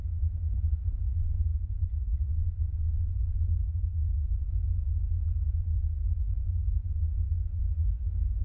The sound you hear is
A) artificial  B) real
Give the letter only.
A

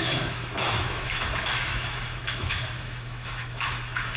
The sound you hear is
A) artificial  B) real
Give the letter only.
A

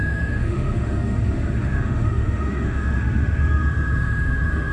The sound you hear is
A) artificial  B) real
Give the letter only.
A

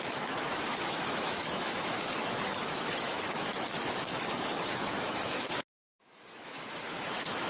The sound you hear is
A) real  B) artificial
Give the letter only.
B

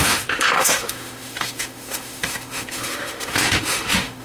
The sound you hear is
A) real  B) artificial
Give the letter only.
B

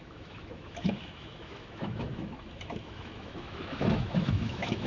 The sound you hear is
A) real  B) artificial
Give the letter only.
B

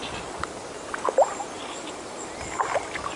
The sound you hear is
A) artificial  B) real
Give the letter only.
B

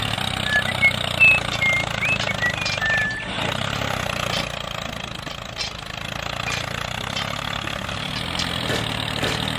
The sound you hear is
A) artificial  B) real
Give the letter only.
B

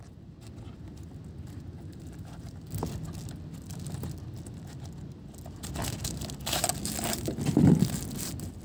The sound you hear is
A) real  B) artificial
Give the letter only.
A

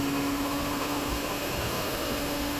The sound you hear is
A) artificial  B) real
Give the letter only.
A